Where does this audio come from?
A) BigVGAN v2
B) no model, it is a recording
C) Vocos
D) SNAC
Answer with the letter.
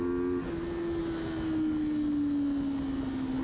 B